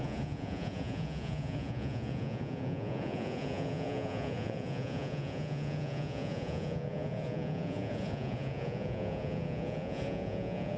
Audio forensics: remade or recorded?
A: remade